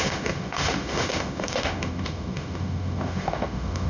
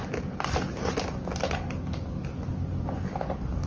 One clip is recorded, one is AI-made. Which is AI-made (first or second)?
first